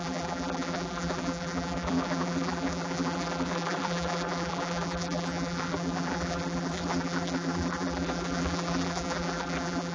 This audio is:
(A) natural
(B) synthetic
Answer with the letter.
B